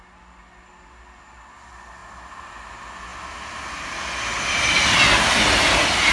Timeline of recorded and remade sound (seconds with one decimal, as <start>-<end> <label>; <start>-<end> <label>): 0.0-6.1 recorded